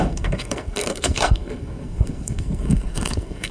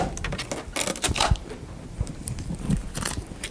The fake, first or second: first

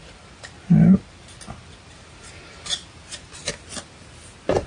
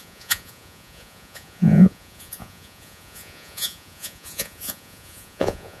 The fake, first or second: second